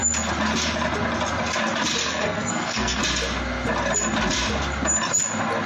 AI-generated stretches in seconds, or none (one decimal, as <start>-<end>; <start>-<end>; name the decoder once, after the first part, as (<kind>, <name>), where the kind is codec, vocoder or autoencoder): 2.0-3.0 (codec, SNAC)